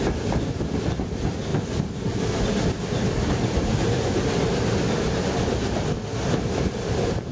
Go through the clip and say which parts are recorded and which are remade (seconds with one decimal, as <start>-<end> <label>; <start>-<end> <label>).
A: 0.0-7.3 recorded